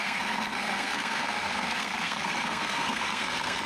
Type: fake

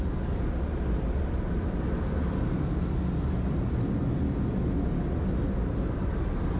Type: real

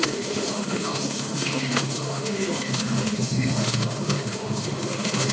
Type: fake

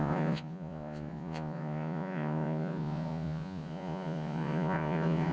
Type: fake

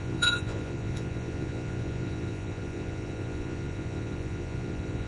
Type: fake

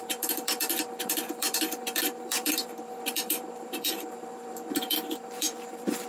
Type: fake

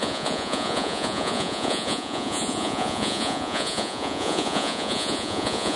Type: fake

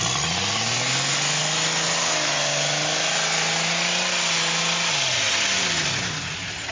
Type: real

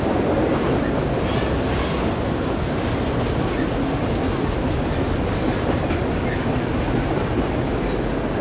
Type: real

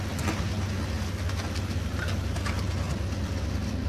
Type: real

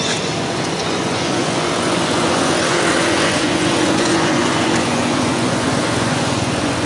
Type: fake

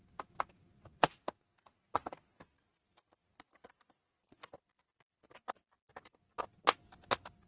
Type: real